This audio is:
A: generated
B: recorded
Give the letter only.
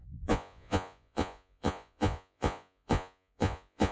A